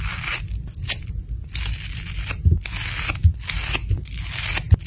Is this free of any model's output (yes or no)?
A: yes